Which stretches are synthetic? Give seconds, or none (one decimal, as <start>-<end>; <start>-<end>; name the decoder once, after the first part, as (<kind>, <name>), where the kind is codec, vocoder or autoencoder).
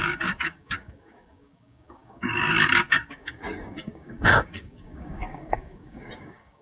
0.0-6.6 (codec, DAC)